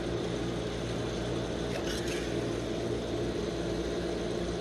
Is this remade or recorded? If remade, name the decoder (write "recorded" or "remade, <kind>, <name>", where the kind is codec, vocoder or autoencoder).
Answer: recorded